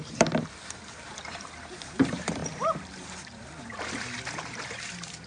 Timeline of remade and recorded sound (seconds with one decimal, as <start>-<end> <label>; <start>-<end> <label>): 0.0-5.3 remade